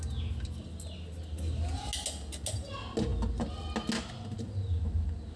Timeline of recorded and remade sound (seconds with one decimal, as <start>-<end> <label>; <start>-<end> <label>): 0.0-5.4 recorded